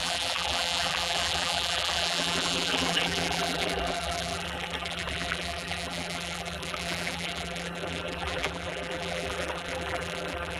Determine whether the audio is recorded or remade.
remade